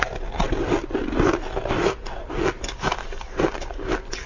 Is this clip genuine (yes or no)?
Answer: yes